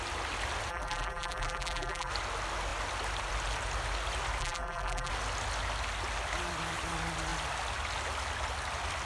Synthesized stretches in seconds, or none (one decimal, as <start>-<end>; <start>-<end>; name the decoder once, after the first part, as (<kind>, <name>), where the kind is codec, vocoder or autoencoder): 0.7-2.1 (vocoder, BigVGAN v2); 4.4-5.1